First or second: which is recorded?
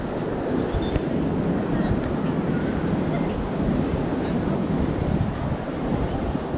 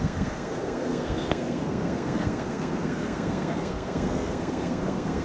first